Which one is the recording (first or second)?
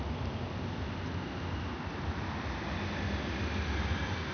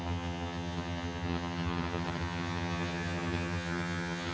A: first